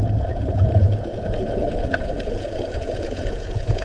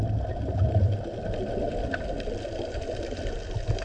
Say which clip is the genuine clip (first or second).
second